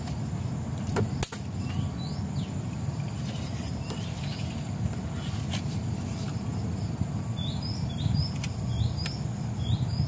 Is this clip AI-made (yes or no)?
no